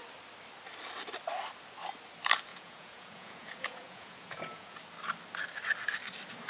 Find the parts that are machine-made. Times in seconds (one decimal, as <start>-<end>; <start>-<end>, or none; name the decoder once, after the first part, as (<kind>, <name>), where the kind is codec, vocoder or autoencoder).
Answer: 2.5-4.8 (vocoder, Vocos)